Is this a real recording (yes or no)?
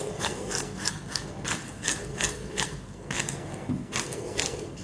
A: no